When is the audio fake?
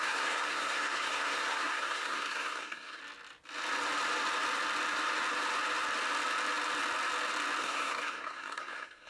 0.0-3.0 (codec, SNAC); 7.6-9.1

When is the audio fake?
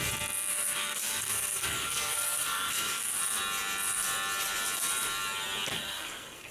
0.5-3.2 (codec, SNAC); 5.7-6.5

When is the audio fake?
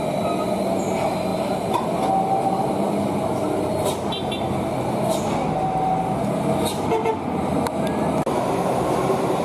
none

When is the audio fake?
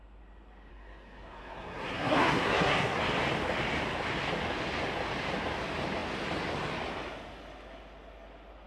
0.7-3.0 (codec, SNAC)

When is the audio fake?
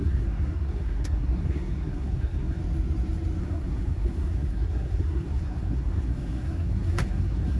0.0-2.6 (codec, SNAC); 3.4-7.6